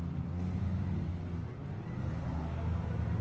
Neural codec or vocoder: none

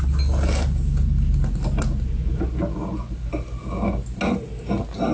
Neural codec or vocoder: none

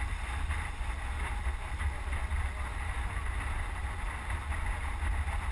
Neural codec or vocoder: none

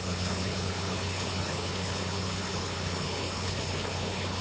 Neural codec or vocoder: codec, HILCodec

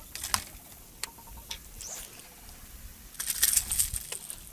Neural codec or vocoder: none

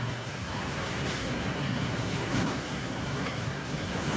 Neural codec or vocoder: codec, SNAC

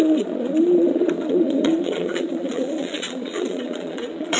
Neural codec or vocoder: vocoder, Vocos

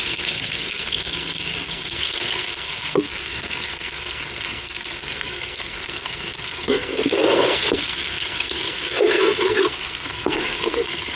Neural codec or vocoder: codec, SNAC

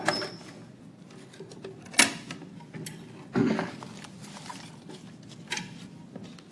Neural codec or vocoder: none